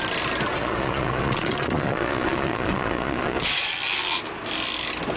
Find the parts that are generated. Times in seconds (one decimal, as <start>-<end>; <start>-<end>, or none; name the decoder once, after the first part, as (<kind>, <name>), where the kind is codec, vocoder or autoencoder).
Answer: 0.6-3.7 (vocoder, Vocos)